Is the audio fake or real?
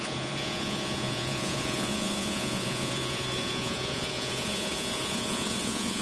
fake